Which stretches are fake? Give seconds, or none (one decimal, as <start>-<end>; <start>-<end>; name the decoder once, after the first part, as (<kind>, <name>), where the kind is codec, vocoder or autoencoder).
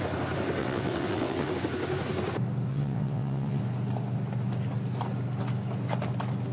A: 0.6-1.5 (vocoder, WaveNeXt); 2.7-3.6